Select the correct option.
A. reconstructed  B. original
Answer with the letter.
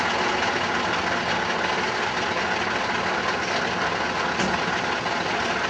B